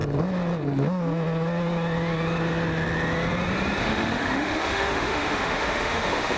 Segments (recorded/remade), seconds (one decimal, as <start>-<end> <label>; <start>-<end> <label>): 0.0-3.8 recorded; 3.8-6.4 remade